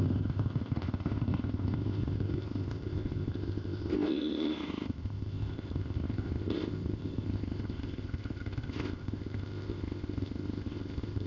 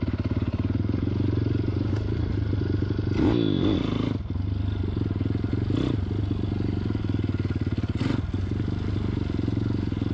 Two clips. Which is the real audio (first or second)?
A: second